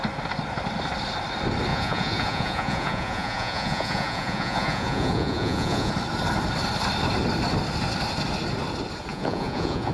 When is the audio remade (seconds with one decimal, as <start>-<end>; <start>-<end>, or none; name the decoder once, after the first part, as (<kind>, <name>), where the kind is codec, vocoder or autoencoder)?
1.7-5.9 (vocoder, Vocos); 9.1-9.9